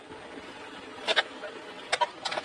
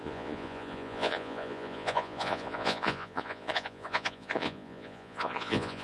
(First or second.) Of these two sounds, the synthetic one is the second